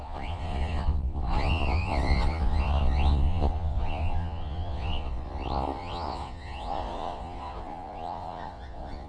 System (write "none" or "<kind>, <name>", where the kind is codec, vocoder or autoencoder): vocoder, Vocos